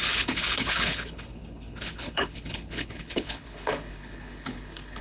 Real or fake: fake